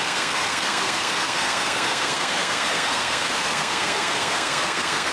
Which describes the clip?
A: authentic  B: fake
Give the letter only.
B